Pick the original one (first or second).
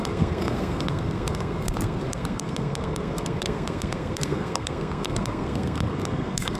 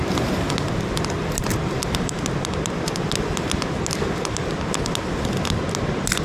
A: second